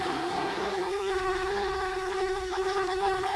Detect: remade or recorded remade